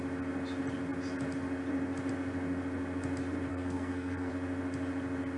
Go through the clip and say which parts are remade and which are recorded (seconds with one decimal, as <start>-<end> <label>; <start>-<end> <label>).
0.0-3.5 recorded; 3.5-4.3 remade; 4.3-5.4 recorded